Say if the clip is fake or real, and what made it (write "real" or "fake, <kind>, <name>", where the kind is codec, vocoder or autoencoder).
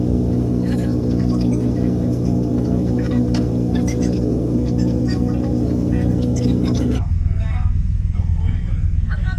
fake, codec, SNAC